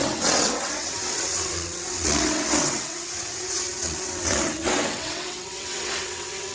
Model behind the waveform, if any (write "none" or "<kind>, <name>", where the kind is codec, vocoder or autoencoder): vocoder, WaveNeXt